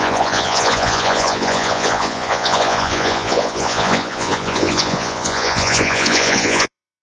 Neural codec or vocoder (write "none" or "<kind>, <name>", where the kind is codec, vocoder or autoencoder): vocoder, Vocos